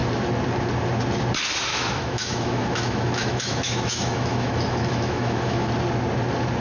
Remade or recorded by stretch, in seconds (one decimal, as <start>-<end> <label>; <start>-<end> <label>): 0.0-1.7 recorded; 1.7-5.7 remade; 5.7-6.6 recorded